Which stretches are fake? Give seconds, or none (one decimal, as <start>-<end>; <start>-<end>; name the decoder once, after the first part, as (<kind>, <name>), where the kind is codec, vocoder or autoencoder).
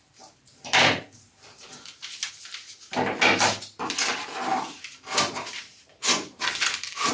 0.0-2.3 (vocoder, BigVGAN v2); 4.5-7.1